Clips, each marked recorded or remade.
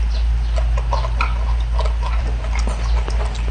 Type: recorded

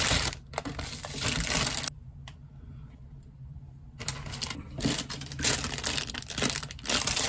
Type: recorded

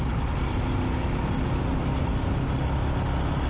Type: recorded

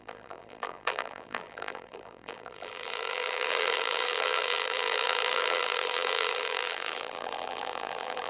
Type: remade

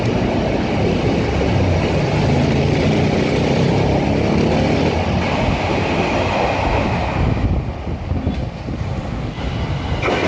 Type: recorded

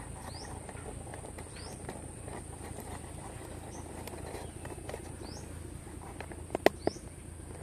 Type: recorded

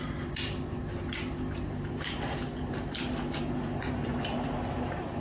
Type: remade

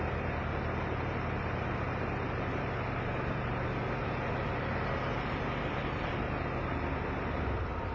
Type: recorded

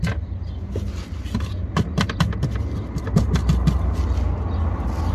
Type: recorded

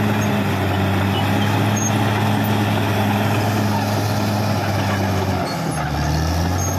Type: recorded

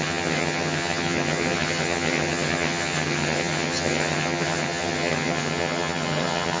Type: remade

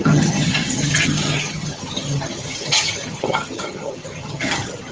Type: remade